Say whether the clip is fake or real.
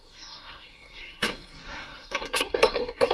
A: fake